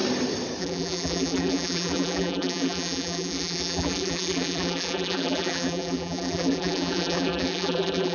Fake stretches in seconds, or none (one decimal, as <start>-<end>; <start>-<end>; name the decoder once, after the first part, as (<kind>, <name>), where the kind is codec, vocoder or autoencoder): 0.6-8.1 (vocoder, BigVGAN v2)

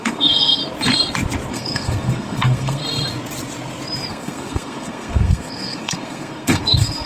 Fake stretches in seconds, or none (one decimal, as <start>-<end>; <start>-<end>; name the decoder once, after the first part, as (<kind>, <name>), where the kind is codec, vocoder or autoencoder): 0.0-0.6 (codec, SNAC); 1.5-2.8; 4.1-7.1

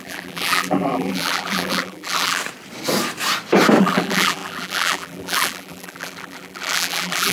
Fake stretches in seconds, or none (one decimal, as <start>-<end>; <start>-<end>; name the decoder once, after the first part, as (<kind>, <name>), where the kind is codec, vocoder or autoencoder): 0.0-2.4 (vocoder, BigVGAN v2); 3.8-7.3